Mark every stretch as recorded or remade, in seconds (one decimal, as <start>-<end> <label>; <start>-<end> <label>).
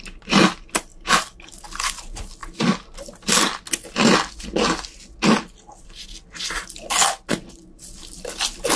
0.0-8.8 recorded